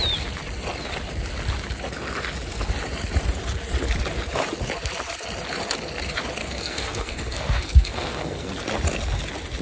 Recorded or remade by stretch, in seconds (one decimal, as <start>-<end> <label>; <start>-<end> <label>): 0.0-6.4 recorded; 6.4-8.5 remade; 8.5-9.6 recorded